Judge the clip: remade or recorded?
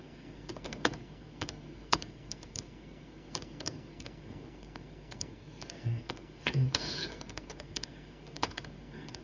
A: remade